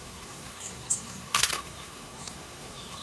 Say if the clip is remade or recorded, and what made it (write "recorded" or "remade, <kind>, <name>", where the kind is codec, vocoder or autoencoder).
remade, codec, SNAC